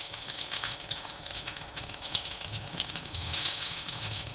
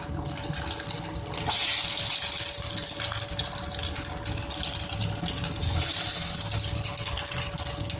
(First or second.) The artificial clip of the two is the first